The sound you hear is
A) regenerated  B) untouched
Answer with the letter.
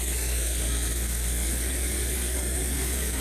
A